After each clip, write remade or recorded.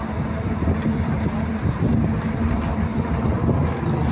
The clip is recorded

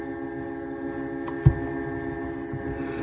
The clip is recorded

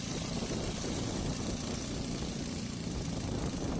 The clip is recorded